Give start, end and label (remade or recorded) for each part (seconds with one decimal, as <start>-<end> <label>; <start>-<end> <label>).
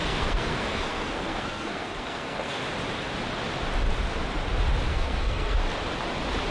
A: 0.0-2.6 remade; 2.6-4.9 recorded; 4.9-5.6 remade; 5.6-6.5 recorded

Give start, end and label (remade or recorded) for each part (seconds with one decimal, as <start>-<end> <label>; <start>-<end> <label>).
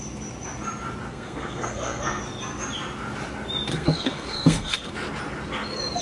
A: 0.0-1.1 recorded; 1.1-2.2 remade; 2.2-3.7 recorded; 3.7-4.9 remade; 4.9-6.0 recorded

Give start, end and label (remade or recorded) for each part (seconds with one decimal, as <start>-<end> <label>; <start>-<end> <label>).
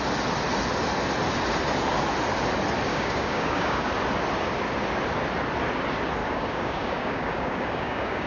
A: 0.0-2.9 recorded; 2.9-3.9 remade; 3.9-6.2 recorded; 6.2-8.3 remade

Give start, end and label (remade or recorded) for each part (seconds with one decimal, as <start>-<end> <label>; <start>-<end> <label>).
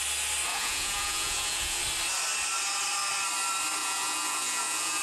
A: 0.0-0.5 recorded; 0.5-1.8 remade; 1.8-3.8 recorded; 3.8-5.0 remade